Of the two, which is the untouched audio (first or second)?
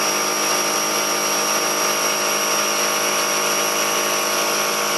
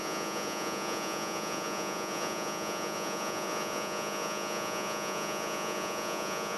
first